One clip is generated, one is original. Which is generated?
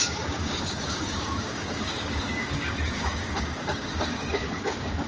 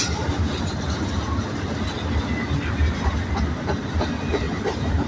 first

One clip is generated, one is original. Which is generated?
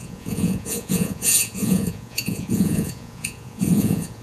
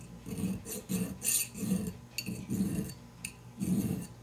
first